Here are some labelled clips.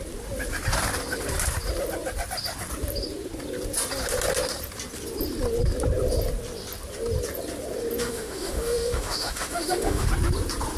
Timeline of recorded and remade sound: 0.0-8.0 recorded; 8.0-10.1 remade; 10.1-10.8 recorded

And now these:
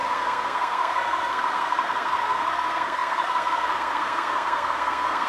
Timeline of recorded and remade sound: 0.0-5.3 remade

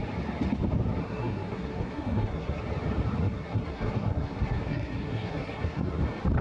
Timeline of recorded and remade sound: 0.0-1.0 recorded; 1.0-2.6 remade; 2.6-3.2 recorded; 3.2-6.0 remade; 6.0-6.4 recorded

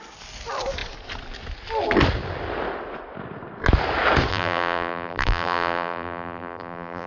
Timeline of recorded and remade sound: 0.0-4.3 recorded; 4.3-7.1 remade

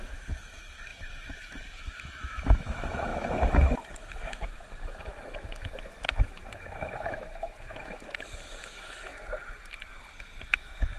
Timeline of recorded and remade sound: 0.0-9.1 remade; 9.1-10.5 recorded; 10.5-11.0 remade

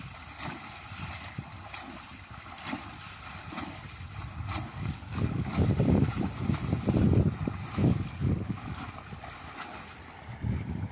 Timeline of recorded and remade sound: 0.0-4.7 recorded; 4.7-5.7 remade; 5.7-7.8 recorded; 7.8-8.9 remade; 8.9-10.9 recorded

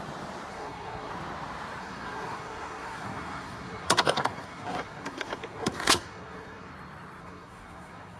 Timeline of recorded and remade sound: 0.0-0.5 recorded; 0.5-1.1 remade; 1.1-1.8 recorded; 1.8-6.7 remade; 6.7-7.2 recorded; 7.2-8.2 remade